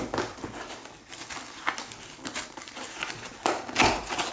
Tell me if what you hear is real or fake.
real